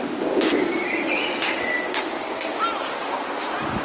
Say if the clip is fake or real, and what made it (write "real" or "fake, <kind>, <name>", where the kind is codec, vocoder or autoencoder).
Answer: real